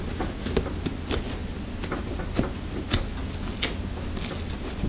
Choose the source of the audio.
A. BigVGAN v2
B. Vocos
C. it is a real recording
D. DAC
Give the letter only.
C